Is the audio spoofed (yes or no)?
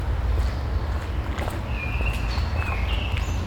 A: no